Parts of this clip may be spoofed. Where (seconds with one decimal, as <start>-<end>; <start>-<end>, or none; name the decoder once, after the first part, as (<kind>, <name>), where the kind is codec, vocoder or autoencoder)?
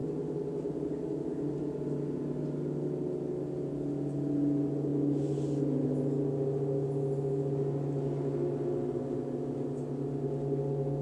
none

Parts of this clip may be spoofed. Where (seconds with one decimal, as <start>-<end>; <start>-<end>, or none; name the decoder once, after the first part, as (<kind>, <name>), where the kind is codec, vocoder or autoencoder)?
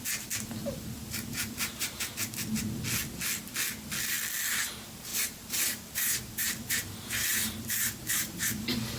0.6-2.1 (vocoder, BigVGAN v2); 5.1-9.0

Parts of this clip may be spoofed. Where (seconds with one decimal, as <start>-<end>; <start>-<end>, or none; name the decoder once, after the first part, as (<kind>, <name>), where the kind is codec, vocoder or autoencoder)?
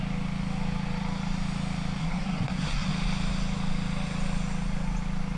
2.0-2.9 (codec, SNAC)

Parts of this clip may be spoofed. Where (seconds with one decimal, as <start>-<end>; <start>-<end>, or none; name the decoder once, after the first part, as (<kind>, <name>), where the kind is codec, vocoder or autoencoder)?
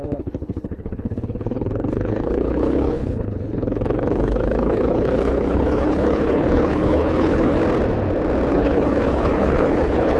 0.0-7.6 (codec, HILCodec); 8.5-10.2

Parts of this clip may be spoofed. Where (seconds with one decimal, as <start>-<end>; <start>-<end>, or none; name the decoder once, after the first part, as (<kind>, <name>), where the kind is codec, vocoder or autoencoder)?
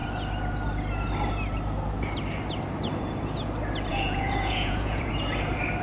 3.9-5.1 (vocoder, Vocos)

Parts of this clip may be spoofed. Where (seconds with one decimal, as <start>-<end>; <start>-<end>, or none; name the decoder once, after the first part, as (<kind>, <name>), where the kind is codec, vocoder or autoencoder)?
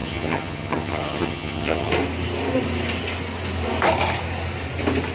0.0-1.9 (vocoder, HiFi-GAN)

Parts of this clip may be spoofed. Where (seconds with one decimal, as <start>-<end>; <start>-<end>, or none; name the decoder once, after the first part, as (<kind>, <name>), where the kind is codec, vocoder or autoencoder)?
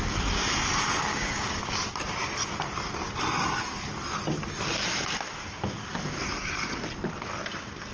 1.1-1.7 (codec, DAC)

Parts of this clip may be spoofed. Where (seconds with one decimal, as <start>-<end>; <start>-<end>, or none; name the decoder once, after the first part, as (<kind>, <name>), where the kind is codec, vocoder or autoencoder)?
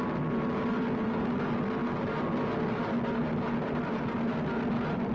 none